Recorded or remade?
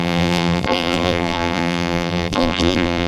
remade